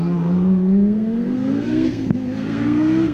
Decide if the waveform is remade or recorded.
remade